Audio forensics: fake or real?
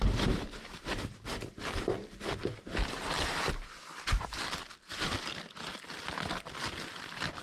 fake